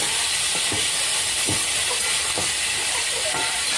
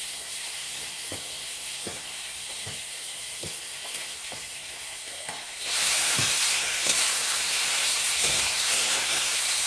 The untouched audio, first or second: first